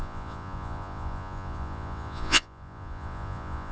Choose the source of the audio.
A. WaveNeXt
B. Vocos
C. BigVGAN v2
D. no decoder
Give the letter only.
B